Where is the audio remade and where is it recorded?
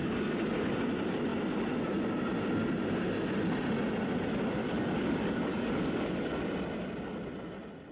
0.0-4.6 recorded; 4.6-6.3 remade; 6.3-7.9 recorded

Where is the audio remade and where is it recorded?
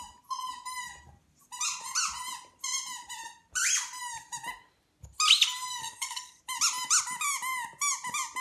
0.0-5.7 recorded; 5.7-6.4 remade; 6.4-8.4 recorded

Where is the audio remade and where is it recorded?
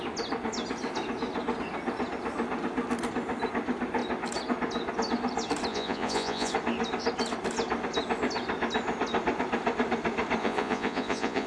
0.0-5.7 recorded; 5.7-6.5 remade; 6.5-10.4 recorded; 10.4-11.5 remade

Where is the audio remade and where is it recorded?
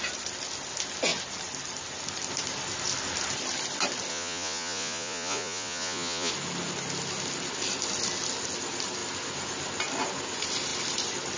0.0-4.1 recorded; 4.1-6.3 remade; 6.3-11.4 recorded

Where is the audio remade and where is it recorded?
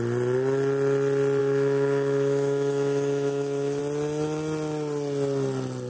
0.0-1.4 recorded; 1.4-3.8 remade; 3.8-5.9 recorded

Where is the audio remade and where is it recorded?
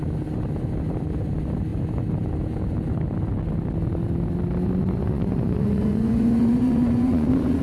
0.0-4.8 recorded; 4.8-7.6 remade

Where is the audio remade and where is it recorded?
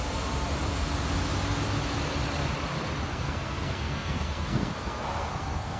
0.0-3.1 recorded; 3.1-5.8 remade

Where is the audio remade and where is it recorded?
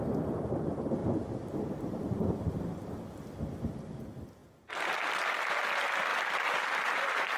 0.0-1.0 recorded; 1.0-2.0 remade; 2.0-7.4 recorded